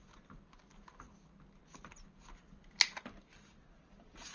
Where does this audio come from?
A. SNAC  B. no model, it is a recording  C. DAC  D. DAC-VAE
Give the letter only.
B